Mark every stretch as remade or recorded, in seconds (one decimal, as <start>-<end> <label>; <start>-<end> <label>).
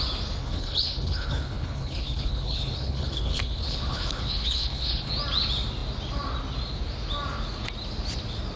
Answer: 0.0-0.4 recorded; 0.4-5.1 remade; 5.1-8.6 recorded